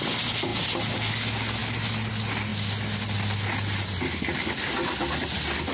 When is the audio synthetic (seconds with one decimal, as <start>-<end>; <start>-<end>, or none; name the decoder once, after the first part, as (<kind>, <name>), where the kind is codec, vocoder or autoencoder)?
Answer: none